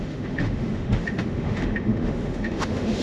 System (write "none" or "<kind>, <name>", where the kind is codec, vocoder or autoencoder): autoencoder, DAC-VAE